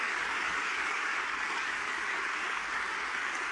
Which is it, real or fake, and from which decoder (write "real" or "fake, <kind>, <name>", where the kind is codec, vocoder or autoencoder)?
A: fake, codec, DAC